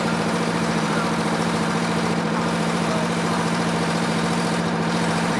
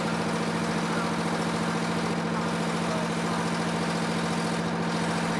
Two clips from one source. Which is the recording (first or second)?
second